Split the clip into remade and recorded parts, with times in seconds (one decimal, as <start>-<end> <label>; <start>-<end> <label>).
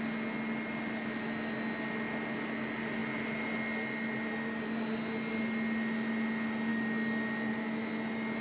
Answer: 0.0-8.4 recorded